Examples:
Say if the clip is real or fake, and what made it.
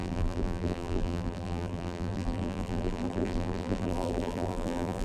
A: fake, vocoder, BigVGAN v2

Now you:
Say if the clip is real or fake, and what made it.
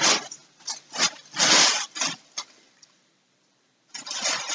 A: real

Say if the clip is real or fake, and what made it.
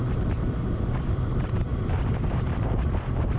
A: fake, vocoder, BigVGAN v2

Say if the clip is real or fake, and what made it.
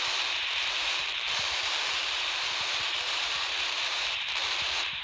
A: fake, vocoder, BigVGAN v2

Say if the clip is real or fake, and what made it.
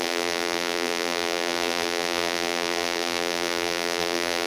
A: fake, vocoder, BigVGAN v2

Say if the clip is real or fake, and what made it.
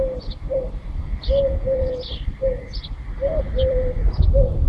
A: fake, vocoder, BigVGAN v2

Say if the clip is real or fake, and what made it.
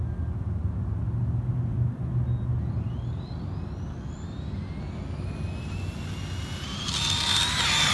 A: real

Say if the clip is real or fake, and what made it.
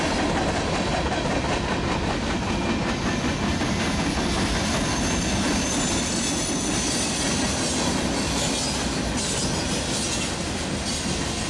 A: real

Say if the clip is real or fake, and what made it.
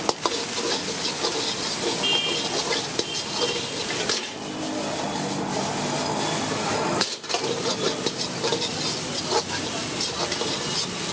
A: real